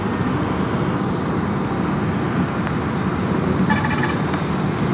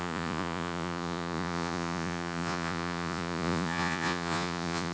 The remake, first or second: second